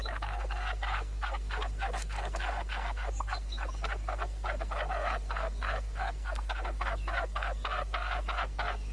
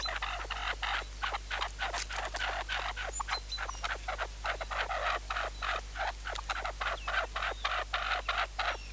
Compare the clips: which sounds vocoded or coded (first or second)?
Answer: first